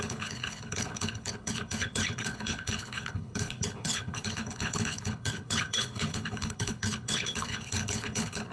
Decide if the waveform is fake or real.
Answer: fake